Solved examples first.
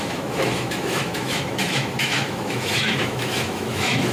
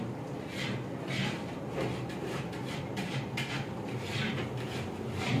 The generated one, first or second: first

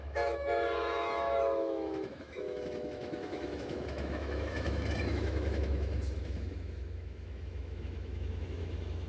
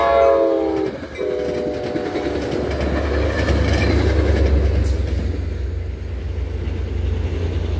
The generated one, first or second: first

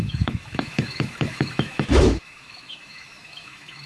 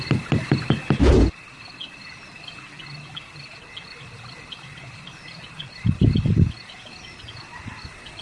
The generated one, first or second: first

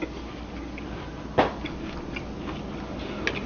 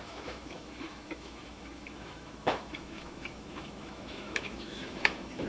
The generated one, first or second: second